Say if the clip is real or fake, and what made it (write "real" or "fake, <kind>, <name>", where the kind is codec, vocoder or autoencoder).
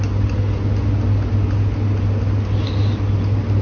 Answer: real